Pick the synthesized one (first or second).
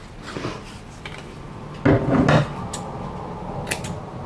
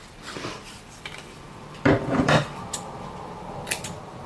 second